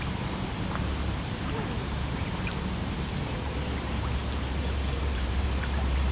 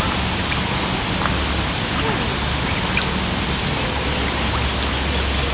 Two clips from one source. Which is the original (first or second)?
second